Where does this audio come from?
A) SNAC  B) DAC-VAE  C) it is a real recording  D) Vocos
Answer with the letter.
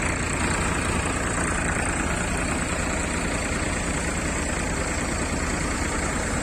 C